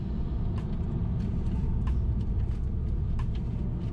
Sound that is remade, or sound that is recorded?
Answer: recorded